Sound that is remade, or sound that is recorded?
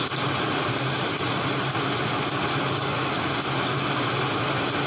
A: recorded